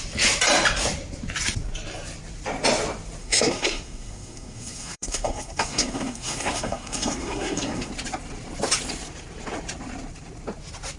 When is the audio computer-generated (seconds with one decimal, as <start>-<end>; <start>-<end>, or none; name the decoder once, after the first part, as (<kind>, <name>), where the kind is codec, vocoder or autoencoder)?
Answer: 3.2-7.9 (codec, SNAC)